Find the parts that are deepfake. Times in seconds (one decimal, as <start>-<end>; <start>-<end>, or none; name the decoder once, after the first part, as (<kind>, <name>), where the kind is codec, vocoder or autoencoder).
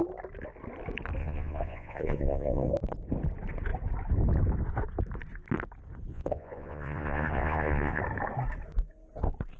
1.2-2.7 (vocoder, Vocos); 6.1-8.0